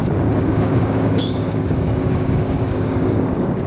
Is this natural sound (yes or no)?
no